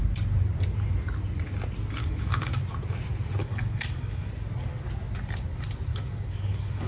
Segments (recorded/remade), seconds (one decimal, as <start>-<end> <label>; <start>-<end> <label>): 0.0-2.0 recorded; 2.0-2.6 remade; 2.6-3.4 recorded; 3.4-4.3 remade; 4.3-5.9 recorded; 5.9-6.9 remade